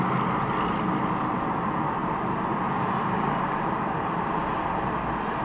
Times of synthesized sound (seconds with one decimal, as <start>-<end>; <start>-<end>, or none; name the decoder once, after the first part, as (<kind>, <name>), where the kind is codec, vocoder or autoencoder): 2.0-5.4 (vocoder, BigVGAN v2)